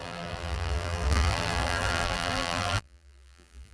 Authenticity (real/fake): fake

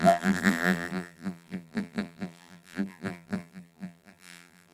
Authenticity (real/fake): fake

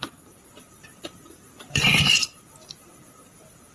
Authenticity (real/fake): fake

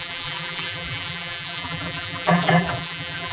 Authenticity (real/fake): fake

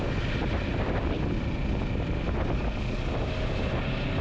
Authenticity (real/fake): real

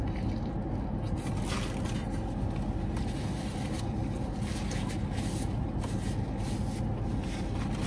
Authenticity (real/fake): real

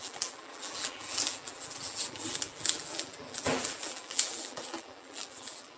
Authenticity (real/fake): fake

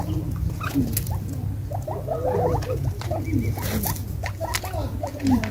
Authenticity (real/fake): real